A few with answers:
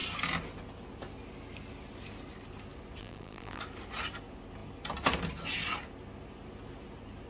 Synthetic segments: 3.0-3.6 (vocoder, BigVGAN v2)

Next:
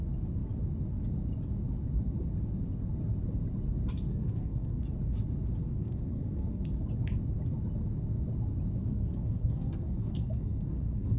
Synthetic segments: 4.1-4.8 (codec, SNAC); 5.6-6.6; 8.8-11.2

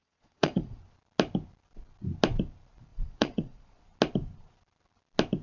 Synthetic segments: 0.0-0.8 (vocoder, Vocos); 2.9-3.8

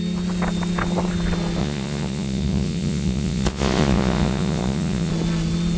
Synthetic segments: 1.6-5.1 (vocoder, Vocos)

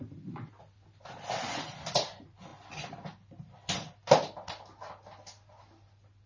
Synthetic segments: none